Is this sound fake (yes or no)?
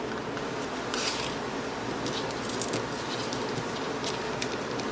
no